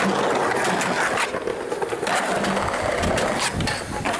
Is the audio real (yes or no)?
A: yes